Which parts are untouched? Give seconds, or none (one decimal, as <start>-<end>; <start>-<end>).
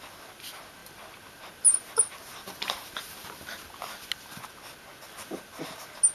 0.0-6.1